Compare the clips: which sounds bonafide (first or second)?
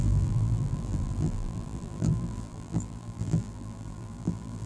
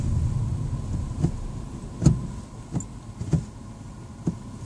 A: second